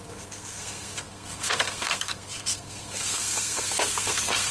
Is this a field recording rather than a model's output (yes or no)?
no